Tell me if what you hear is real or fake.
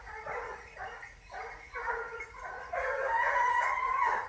fake